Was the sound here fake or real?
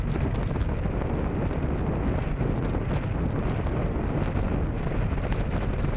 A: real